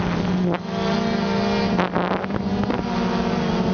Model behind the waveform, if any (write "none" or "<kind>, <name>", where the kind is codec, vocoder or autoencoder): none